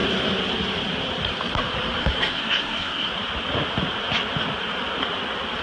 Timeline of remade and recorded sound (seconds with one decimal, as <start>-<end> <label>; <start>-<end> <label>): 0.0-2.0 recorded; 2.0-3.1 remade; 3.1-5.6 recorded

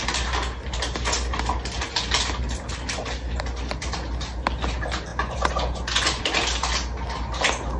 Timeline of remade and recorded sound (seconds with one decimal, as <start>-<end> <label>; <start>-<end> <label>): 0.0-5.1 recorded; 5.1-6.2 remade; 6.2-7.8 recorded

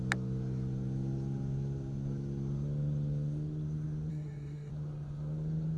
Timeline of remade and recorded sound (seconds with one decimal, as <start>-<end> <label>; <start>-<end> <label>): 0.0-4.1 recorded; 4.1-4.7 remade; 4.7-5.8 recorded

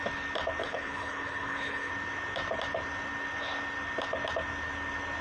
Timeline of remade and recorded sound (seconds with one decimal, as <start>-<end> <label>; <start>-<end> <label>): 0.0-0.6 recorded; 0.6-1.9 remade; 1.9-5.2 recorded

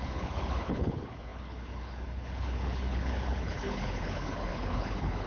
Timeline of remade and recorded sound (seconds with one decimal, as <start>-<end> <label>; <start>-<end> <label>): 0.0-5.3 remade

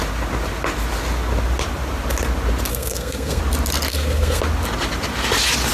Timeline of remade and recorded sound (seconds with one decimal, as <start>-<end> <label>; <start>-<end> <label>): 0.0-2.7 recorded; 2.7-3.4 remade; 3.4-3.9 recorded; 3.9-4.4 remade; 4.4-5.7 recorded

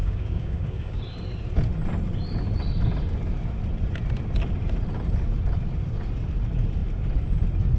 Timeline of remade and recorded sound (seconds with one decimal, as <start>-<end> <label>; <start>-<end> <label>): 0.0-1.0 remade; 1.0-7.8 recorded

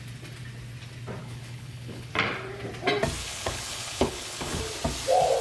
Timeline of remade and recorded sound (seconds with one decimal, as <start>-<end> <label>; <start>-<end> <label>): 0.0-1.2 recorded; 1.2-2.1 remade; 2.1-3.2 recorded; 3.2-4.6 remade; 4.6-5.4 recorded